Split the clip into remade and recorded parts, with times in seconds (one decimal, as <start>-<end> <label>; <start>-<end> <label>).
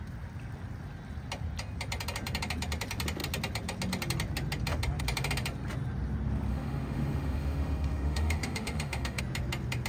0.0-6.5 recorded; 6.5-9.2 remade; 9.2-9.9 recorded